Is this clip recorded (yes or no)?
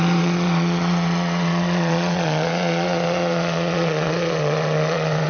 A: no